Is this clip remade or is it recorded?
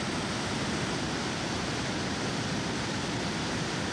recorded